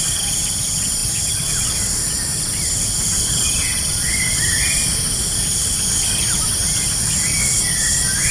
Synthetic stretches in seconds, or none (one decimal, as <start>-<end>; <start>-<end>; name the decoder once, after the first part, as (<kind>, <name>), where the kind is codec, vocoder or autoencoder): 0.0-8.3 (vocoder, BigVGAN v2)